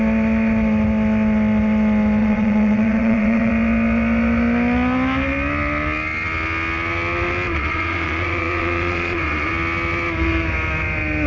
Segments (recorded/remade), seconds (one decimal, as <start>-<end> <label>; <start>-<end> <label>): 0.0-2.2 recorded; 2.2-3.5 remade; 3.5-7.5 recorded; 7.5-9.5 remade; 9.5-11.3 recorded